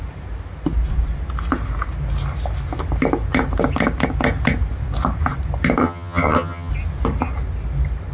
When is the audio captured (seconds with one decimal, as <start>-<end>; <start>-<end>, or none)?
0.0-5.8; 6.7-8.1